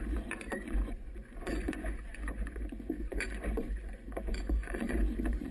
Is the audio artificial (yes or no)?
yes